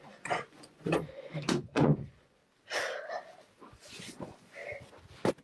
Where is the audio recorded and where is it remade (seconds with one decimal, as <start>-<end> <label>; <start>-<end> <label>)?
0.0-2.4 remade; 2.4-3.6 recorded; 3.6-4.6 remade; 4.6-5.4 recorded